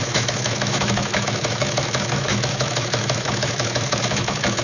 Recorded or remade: remade